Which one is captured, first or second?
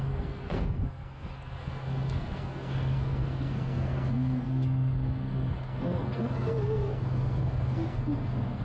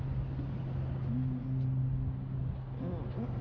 second